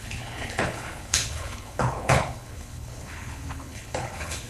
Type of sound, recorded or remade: remade